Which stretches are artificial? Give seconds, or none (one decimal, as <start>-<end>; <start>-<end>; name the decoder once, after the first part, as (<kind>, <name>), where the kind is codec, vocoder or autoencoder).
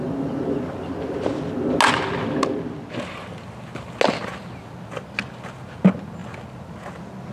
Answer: none